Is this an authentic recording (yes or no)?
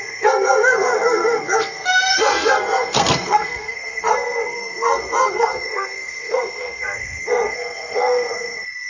no